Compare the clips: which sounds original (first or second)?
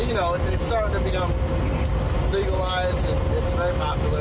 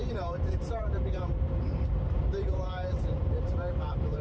first